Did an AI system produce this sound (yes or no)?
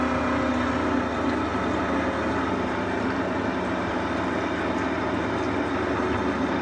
no